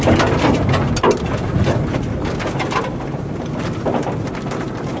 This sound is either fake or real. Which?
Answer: real